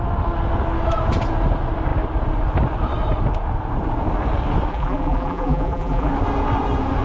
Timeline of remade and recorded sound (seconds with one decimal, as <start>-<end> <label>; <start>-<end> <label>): 0.0-4.7 recorded; 4.7-6.1 remade; 6.1-7.0 recorded

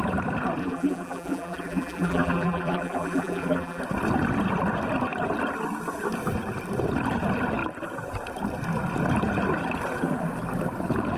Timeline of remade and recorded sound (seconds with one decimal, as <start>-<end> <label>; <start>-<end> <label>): 0.0-0.6 recorded; 0.6-3.8 remade; 3.8-11.2 recorded

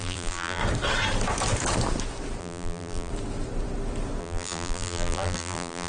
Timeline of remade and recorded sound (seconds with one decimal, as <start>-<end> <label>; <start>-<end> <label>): 0.0-0.6 remade; 0.6-2.4 recorded; 2.4-3.1 remade; 3.1-4.2 recorded; 4.2-5.9 remade